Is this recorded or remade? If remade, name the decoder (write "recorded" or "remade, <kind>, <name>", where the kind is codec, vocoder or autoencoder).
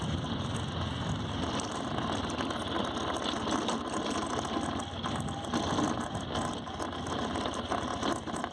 recorded